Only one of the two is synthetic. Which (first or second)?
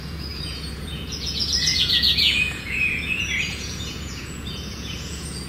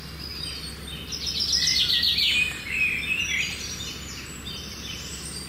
first